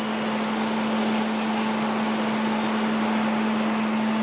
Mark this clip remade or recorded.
recorded